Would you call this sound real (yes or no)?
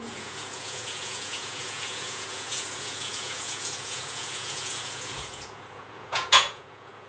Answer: no